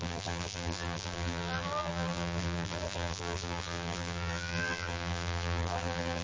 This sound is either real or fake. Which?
fake